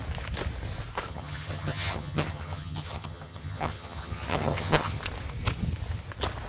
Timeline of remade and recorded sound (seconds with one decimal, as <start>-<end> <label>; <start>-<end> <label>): 0.0-1.1 recorded; 1.1-5.0 remade; 5.0-6.5 recorded